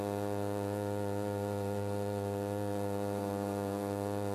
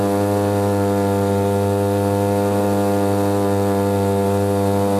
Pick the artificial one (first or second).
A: first